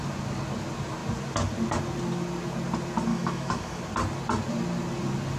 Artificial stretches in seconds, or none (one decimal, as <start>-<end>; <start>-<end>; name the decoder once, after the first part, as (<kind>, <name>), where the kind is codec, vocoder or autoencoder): 3.1-3.8 (autoencoder, DAC-VAE)